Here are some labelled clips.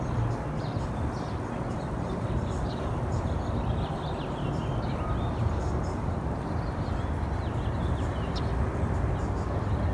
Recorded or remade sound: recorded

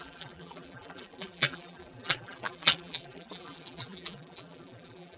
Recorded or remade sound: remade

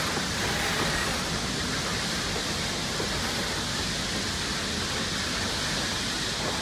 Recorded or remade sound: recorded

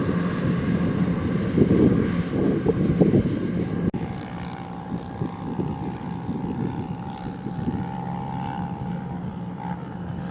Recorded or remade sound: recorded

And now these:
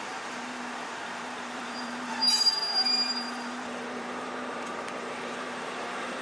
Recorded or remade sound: remade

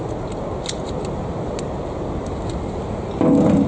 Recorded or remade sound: recorded